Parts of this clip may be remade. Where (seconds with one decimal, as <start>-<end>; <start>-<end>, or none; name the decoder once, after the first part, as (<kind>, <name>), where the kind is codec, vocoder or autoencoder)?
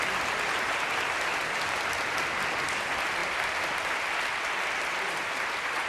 none